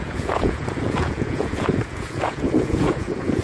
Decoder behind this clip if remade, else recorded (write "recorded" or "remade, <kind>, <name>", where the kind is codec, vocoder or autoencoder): remade, vocoder, Vocos